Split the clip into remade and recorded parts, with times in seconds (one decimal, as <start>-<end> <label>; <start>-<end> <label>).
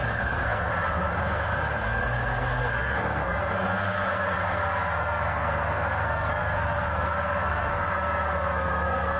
0.0-0.7 remade; 0.7-1.2 recorded; 1.2-9.2 remade